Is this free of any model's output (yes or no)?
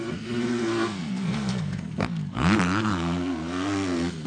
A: no